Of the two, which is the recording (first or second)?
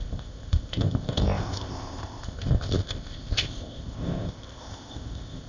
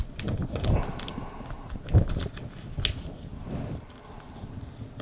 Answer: second